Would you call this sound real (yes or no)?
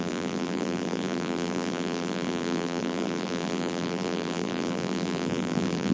no